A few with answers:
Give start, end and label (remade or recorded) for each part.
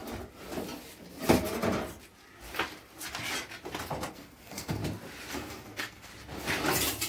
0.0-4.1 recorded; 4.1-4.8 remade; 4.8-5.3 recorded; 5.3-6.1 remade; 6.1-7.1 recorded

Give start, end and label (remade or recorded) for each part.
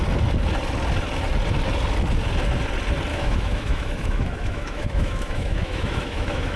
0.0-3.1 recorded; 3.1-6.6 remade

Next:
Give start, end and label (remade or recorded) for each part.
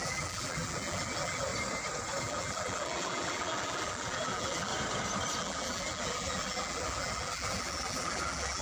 0.0-1.5 remade; 1.5-2.2 recorded; 2.2-4.7 remade; 4.7-5.4 recorded; 5.4-8.6 remade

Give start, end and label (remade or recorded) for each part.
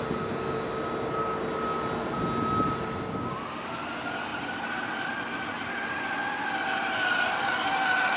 0.0-4.3 recorded; 4.3-5.1 remade; 5.1-8.2 recorded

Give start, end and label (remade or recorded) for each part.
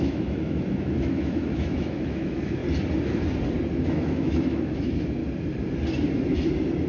0.0-2.6 remade; 2.6-3.8 recorded; 3.8-5.2 remade; 5.2-6.9 recorded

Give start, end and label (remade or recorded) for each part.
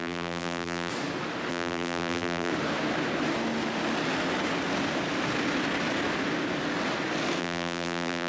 0.0-0.9 remade; 0.9-1.5 recorded; 1.5-2.5 remade; 2.5-7.4 recorded; 7.4-8.3 remade